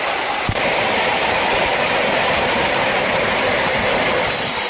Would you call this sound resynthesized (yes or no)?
yes